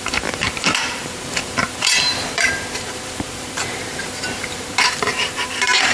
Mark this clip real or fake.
fake